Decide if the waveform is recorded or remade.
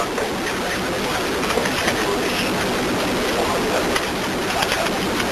recorded